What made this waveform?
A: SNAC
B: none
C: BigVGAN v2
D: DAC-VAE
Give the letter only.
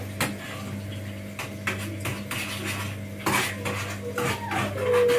B